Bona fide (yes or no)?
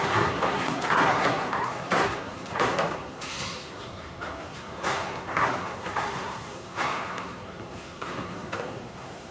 no